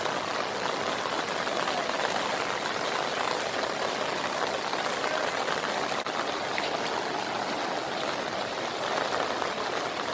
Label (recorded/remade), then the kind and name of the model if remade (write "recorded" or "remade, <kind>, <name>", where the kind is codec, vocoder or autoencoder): recorded